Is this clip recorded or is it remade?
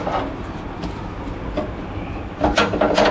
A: recorded